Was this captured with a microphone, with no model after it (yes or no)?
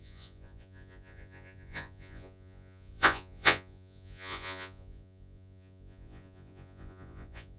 no